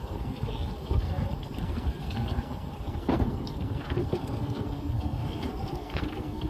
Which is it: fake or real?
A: fake